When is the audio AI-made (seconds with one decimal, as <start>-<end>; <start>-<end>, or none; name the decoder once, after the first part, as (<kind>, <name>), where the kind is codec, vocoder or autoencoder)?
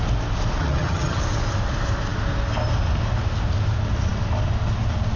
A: 0.6-1.2 (vocoder, HiFi-GAN)